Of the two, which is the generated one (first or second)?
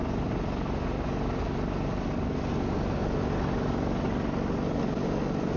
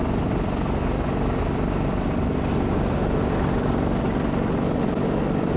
second